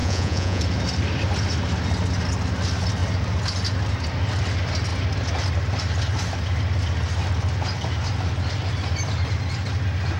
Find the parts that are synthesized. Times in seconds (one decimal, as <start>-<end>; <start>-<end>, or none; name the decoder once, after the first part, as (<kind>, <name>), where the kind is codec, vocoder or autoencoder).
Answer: 0.0-0.6 (vocoder, Vocos)